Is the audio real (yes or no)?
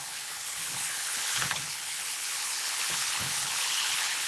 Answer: no